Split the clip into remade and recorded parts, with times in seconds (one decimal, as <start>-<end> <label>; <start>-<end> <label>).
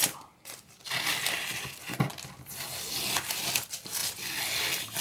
0.0-5.0 recorded